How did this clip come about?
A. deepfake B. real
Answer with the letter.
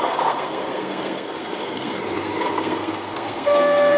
A